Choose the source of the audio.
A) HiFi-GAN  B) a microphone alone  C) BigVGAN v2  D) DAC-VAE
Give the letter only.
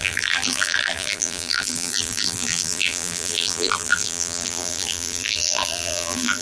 C